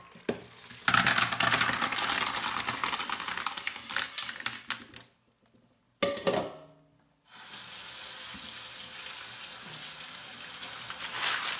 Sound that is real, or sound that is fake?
real